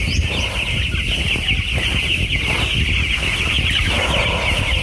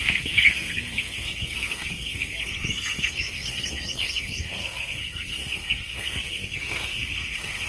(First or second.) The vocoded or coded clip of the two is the second